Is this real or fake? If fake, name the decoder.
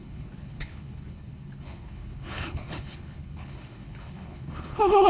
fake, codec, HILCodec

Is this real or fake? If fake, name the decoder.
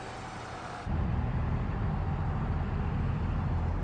real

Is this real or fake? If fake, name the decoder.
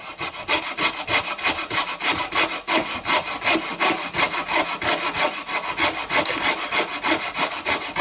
real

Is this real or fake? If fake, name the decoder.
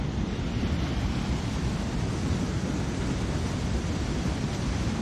real